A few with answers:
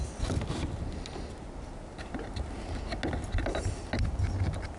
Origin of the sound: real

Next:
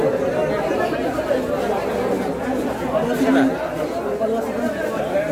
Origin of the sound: real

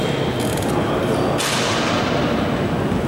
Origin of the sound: real